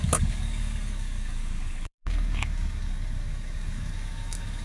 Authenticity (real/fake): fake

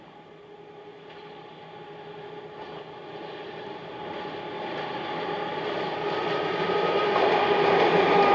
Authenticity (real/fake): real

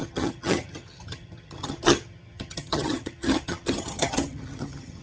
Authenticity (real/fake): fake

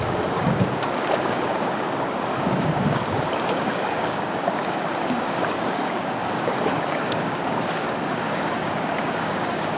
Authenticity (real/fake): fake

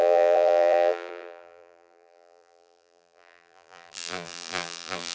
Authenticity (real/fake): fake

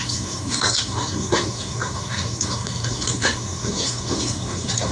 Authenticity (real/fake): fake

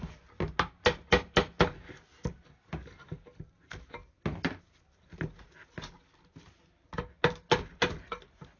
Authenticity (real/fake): real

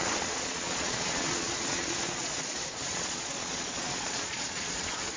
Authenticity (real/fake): fake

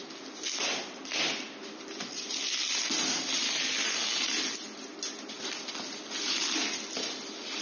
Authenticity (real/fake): real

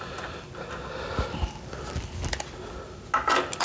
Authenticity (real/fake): real